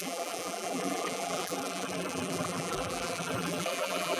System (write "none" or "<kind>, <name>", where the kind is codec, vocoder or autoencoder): vocoder, BigVGAN v2